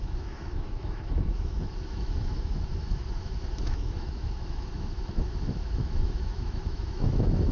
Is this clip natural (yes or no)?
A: no